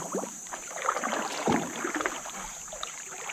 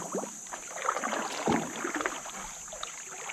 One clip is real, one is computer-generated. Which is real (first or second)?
second